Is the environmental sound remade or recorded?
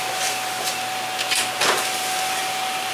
recorded